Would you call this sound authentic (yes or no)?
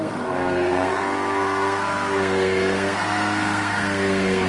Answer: no